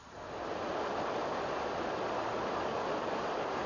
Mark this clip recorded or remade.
recorded